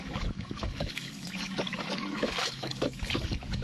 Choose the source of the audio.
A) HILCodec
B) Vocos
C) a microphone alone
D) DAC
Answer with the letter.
D